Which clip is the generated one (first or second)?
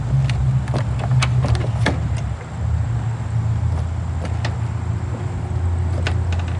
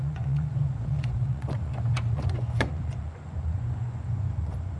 second